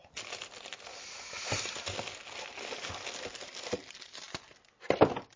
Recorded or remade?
recorded